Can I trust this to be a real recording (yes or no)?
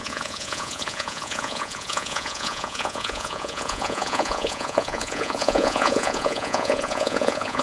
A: no